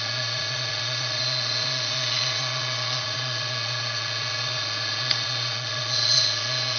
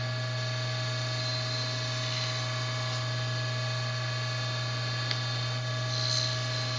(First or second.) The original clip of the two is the second